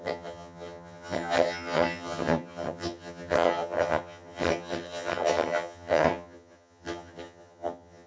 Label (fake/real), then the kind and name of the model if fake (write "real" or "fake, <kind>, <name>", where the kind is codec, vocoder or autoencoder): fake, vocoder, HiFi-GAN